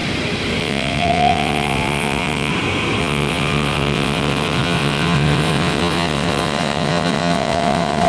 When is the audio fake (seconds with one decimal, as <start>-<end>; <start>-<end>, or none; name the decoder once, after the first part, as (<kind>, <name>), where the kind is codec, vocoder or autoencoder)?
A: 0.6-2.5 (vocoder, WaveNeXt); 3.0-8.1